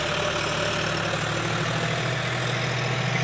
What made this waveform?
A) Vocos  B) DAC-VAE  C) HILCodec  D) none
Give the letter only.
D